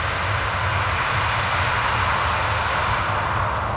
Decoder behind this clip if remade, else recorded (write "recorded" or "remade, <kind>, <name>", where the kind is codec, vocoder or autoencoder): recorded